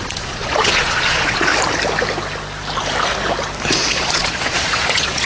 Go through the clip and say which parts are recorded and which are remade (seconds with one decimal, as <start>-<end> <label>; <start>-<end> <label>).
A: 0.0-1.5 remade; 1.5-3.7 recorded; 3.7-5.3 remade